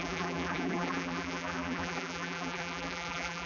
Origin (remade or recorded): remade